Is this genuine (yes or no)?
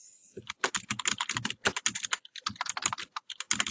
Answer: yes